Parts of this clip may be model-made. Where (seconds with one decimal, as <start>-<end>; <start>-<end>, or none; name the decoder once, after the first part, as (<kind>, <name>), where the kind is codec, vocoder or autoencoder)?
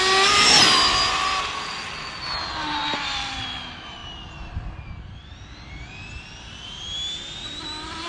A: 2.8-3.5 (vocoder, BigVGAN v2)